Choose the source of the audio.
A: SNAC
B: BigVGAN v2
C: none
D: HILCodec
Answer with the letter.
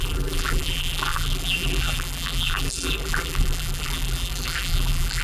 B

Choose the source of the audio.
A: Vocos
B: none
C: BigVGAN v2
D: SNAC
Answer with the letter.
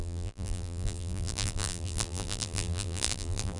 C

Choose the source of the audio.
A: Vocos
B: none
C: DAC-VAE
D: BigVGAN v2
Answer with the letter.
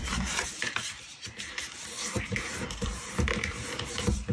D